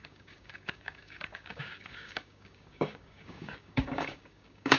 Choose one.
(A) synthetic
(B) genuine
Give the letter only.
A